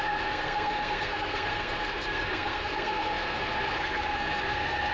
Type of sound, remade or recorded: remade